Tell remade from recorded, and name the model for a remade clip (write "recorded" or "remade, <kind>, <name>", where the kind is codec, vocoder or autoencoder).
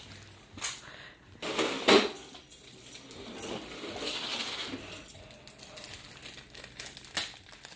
recorded